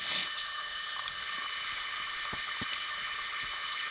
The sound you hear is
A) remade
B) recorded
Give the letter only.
A